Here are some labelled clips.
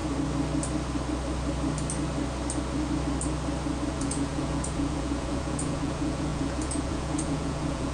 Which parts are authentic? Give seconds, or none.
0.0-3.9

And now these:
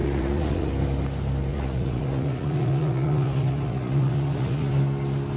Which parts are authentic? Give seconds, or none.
0.7-1.5; 4.7-5.4